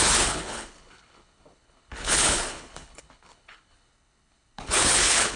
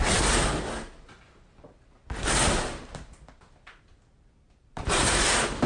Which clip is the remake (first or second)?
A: first